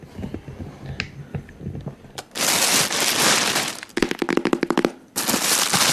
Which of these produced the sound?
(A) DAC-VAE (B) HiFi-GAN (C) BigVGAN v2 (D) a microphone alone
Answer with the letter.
D